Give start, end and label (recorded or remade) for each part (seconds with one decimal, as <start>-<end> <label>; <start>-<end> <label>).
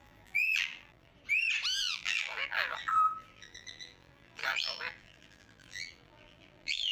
0.0-1.1 remade; 1.1-1.8 recorded; 1.8-6.9 remade